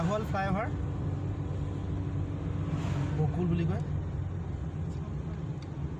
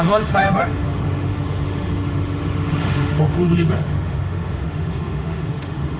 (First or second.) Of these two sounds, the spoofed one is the second